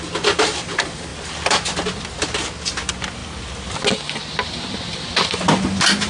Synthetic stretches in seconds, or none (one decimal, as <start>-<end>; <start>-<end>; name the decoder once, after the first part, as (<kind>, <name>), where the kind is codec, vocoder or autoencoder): none